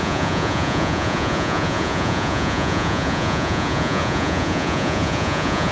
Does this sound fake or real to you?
fake